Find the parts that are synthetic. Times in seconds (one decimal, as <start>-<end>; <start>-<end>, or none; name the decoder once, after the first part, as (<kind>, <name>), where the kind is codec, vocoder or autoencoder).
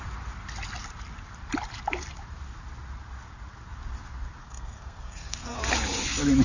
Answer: 4.4-5.6 (codec, SNAC)